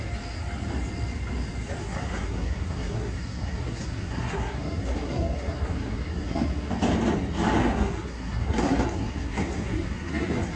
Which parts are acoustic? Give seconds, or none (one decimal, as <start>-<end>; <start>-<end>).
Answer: 0.0-1.8; 6.7-7.6